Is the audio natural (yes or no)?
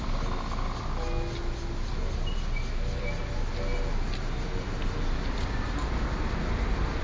yes